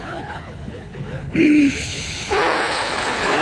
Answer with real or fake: fake